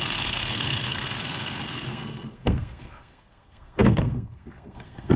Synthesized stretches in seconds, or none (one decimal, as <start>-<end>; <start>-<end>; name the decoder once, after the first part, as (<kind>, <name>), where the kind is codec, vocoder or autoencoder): 0.0-5.2 (codec, SNAC)